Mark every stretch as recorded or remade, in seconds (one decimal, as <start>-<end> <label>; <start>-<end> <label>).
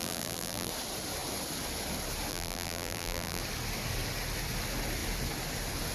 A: 0.0-0.7 remade; 0.7-2.3 recorded; 2.3-3.4 remade; 3.4-5.9 recorded